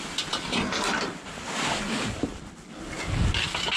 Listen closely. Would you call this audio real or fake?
real